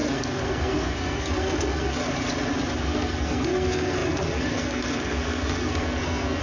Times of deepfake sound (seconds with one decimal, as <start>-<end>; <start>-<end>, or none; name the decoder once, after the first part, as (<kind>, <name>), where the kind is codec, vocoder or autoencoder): 0.0-2.0 (codec, SNAC); 2.8-6.4